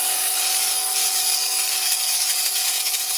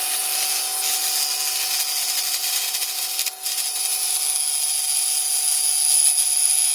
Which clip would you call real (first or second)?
second